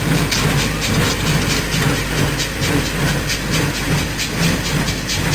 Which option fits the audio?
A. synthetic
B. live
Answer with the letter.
B